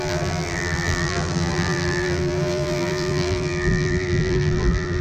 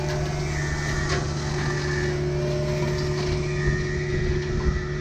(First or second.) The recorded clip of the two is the second